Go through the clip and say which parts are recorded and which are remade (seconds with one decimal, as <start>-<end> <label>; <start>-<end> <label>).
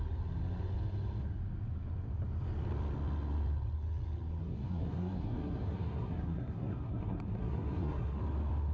0.0-4.4 recorded; 4.4-8.2 remade; 8.2-8.7 recorded